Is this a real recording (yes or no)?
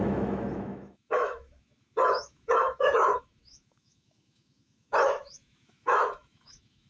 no